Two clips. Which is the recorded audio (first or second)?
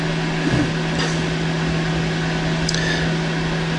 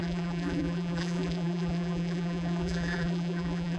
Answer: first